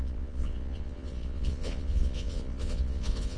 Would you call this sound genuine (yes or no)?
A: no